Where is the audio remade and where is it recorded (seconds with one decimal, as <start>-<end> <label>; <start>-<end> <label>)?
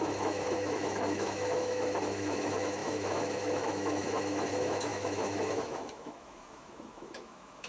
0.0-7.7 remade